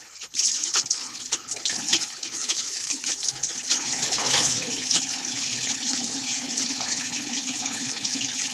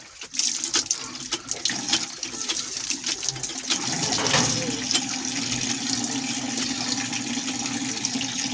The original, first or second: second